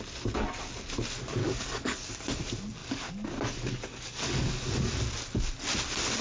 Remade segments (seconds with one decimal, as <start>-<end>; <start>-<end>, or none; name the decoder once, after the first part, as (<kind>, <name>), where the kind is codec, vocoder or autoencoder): 1.4-2.1 (codec, DAC); 2.8-5.0